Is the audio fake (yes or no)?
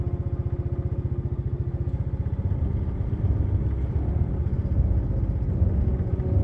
no